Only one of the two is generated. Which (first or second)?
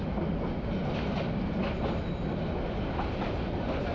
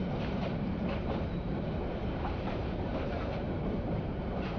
second